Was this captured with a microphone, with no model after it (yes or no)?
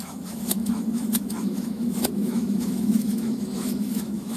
no